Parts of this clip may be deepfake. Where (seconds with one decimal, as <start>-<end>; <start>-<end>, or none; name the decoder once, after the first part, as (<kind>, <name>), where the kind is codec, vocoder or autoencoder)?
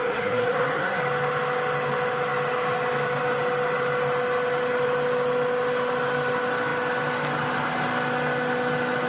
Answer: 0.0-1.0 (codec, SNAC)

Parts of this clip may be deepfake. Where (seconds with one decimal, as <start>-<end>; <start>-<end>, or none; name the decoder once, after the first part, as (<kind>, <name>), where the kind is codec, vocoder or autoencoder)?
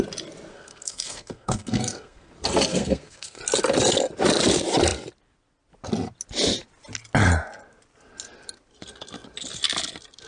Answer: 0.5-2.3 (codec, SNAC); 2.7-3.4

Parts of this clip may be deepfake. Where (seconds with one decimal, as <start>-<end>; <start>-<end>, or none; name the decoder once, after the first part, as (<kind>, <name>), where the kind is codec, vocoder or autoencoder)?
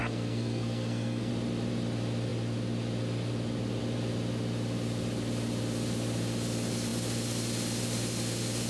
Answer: 0.0-1.3 (codec, SNAC)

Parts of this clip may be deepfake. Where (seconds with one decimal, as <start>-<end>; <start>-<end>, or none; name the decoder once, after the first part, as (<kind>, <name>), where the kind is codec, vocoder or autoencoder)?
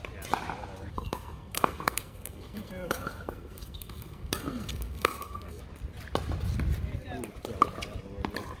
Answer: 0.9-5.6 (codec, SNAC)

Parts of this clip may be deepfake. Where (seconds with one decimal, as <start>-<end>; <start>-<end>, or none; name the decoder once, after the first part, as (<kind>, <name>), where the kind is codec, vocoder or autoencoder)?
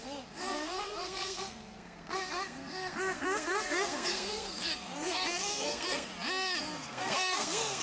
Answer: 0.0-6.1 (codec, SNAC); 6.6-7.8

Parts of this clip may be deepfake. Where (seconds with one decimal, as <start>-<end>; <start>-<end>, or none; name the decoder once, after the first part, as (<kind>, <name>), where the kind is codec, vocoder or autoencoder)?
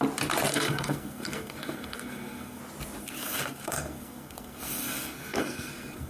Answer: 0.5-2.6 (codec, SNAC); 3.0-6.1